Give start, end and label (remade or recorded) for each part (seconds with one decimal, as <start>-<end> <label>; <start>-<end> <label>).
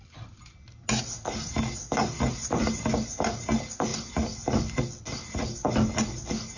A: 0.0-6.6 recorded